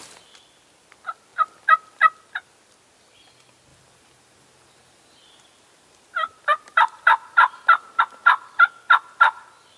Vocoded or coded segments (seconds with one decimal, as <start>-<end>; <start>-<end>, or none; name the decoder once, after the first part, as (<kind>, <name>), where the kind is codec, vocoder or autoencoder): 3.7-8.0 (vocoder, BigVGAN v2)